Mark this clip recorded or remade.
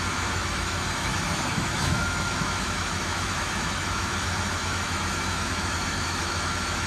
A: remade